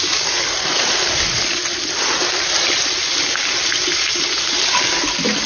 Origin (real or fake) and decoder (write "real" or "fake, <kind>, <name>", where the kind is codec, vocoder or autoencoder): real